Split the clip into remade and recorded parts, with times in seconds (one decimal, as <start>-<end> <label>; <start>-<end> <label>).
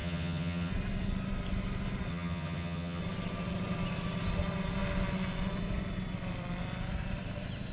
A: 0.0-0.7 remade; 0.7-2.1 recorded; 2.1-3.0 remade; 3.0-7.7 recorded